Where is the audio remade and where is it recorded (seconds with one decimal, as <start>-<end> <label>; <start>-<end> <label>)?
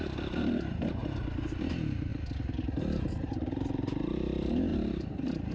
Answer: 0.0-1.0 remade; 1.0-1.6 recorded; 1.6-2.1 remade; 2.1-2.8 recorded; 2.8-5.5 remade